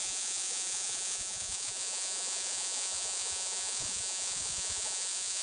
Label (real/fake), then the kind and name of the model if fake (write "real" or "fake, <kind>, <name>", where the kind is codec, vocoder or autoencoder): fake, vocoder, Vocos